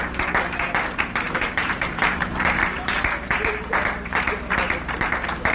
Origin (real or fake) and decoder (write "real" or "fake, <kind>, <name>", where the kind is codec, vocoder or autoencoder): fake, vocoder, BigVGAN v2